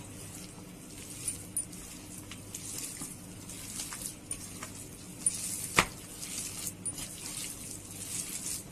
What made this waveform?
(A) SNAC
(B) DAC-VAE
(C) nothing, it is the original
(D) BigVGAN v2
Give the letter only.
C